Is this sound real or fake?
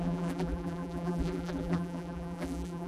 fake